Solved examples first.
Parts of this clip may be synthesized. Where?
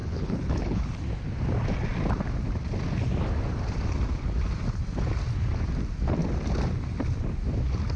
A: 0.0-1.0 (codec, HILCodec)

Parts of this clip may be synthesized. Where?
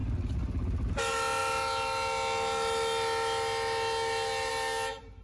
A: none